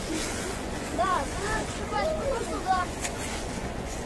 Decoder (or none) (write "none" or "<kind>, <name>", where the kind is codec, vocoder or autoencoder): vocoder, Vocos